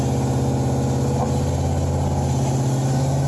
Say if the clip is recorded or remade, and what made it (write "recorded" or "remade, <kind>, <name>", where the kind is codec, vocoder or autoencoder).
recorded